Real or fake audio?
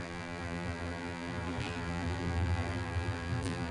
fake